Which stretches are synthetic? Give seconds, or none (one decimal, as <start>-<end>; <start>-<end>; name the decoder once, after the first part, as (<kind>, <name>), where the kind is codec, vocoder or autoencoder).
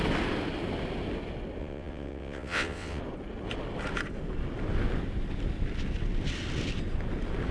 1.6-3.0 (vocoder, WaveNeXt)